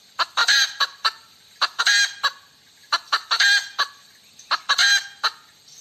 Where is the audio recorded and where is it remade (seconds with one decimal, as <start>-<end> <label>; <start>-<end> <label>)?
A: 0.0-0.4 recorded; 0.4-1.8 remade; 1.8-2.8 recorded; 2.8-4.3 remade; 4.3-5.8 recorded